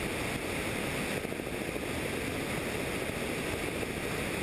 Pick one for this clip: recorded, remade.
recorded